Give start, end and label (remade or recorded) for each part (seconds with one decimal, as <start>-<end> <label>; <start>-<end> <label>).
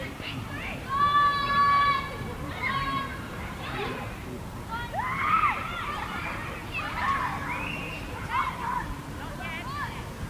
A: 0.0-3.1 recorded; 3.1-4.3 remade; 4.3-7.8 recorded; 7.8-9.2 remade; 9.2-10.3 recorded